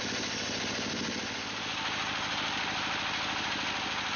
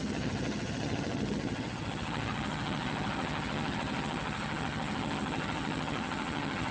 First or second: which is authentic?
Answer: first